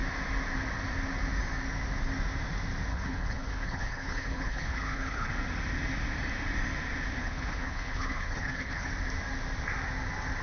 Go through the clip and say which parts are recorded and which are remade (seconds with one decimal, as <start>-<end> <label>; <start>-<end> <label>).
0.0-2.9 recorded; 2.9-5.3 remade; 5.3-7.2 recorded; 7.2-8.9 remade; 8.9-10.4 recorded